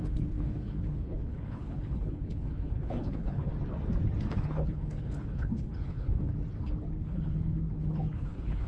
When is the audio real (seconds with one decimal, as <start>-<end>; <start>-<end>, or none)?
3.5-4.3; 6.3-7.0